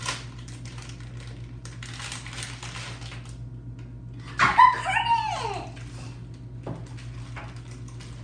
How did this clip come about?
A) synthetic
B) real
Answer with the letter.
B